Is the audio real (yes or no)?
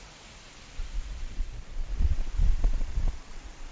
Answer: no